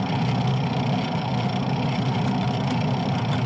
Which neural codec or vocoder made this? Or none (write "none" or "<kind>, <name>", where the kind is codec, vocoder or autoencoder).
none